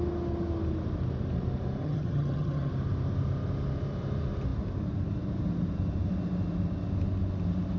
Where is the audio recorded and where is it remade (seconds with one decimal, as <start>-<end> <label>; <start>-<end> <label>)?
0.0-1.8 recorded; 1.8-2.7 remade; 2.7-7.8 recorded